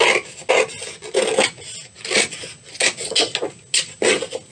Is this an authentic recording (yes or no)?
yes